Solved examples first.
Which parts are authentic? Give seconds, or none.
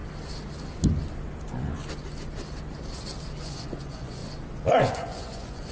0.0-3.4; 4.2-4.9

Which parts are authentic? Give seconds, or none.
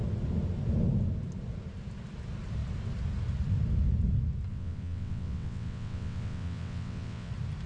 0.0-4.5; 7.3-7.7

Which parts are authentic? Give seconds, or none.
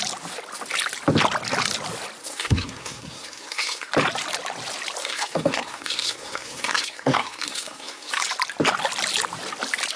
0.0-2.2; 3.9-5.0; 8.1-10.0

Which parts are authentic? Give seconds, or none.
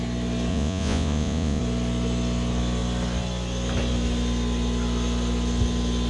0.0-0.5; 1.6-6.1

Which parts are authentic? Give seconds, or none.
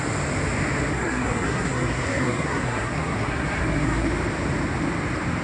0.0-0.9; 4.1-5.4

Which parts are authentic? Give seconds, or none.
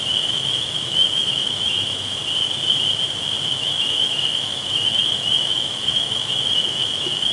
2.2-3.6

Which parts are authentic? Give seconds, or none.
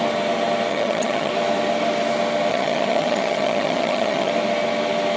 0.0-0.7; 1.3-2.5; 4.3-5.2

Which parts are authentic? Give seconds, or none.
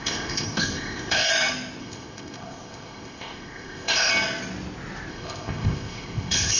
1.3-1.8; 4.1-5.1